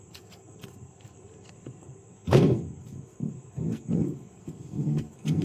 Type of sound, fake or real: fake